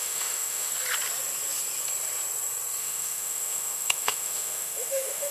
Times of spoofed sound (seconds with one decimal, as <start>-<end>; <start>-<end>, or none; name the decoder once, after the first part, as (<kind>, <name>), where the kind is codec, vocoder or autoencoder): 0.0-0.7 (autoencoder, DAC-VAE); 2.8-5.3